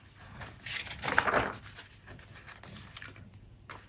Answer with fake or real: real